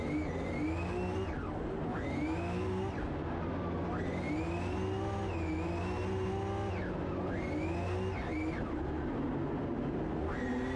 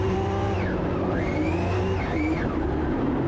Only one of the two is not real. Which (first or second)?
second